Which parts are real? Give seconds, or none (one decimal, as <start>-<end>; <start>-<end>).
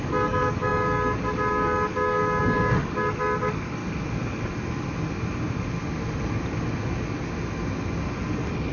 3.8-8.7